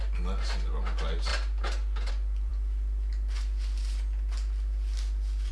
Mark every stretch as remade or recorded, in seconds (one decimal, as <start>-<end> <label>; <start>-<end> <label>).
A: 0.0-5.5 recorded